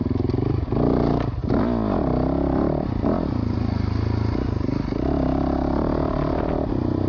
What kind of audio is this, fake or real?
real